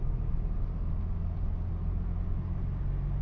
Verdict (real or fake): real